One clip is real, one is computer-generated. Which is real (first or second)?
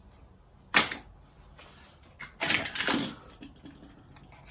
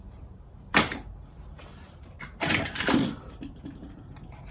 first